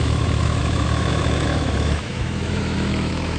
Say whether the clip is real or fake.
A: fake